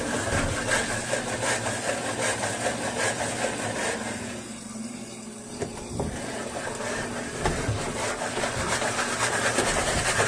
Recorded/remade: recorded